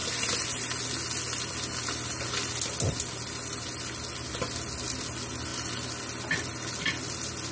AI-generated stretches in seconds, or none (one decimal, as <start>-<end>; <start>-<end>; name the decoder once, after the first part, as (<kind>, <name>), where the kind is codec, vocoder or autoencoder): none